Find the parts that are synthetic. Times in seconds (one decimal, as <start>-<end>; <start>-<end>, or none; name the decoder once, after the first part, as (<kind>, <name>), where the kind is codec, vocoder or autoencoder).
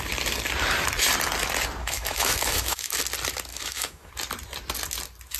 1.8-3.0 (autoencoder, DAC-VAE); 3.5-4.1